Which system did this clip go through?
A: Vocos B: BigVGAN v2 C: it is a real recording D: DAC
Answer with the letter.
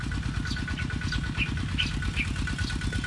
C